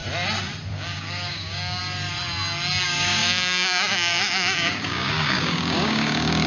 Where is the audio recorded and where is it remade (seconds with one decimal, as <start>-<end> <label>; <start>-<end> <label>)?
0.0-0.7 recorded; 0.7-1.8 remade; 1.8-2.8 recorded; 2.8-6.5 remade